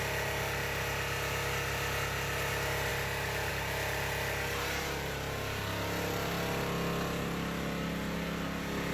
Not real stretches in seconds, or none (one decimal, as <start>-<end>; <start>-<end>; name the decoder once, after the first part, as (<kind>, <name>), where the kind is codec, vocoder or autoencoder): none